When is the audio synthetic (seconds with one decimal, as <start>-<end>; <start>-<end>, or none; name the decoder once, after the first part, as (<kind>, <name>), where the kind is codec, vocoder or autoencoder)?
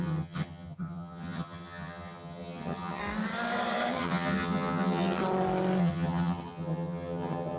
0.0-3.0 (vocoder, HiFi-GAN); 3.9-5.2; 5.8-7.6